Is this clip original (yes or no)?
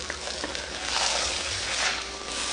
no